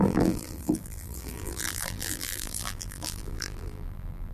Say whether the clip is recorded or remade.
remade